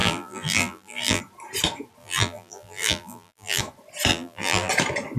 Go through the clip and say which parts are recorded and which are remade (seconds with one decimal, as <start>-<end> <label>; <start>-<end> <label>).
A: 0.0-1.2 remade; 1.2-2.0 recorded; 2.0-3.6 remade; 3.6-4.1 recorded; 4.1-4.7 remade; 4.7-5.2 recorded